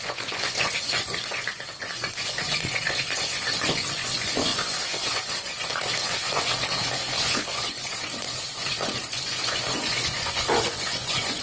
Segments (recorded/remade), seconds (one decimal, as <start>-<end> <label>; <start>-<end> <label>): 0.0-11.4 remade